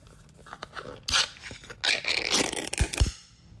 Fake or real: real